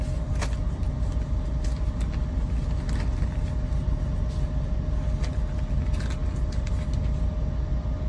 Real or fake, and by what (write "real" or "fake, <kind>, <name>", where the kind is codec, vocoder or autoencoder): real